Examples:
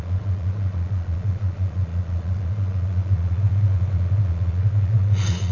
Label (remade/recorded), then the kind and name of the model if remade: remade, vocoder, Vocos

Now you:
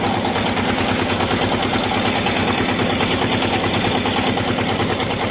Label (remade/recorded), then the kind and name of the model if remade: recorded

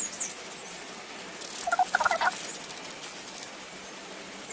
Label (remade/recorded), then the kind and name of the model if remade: recorded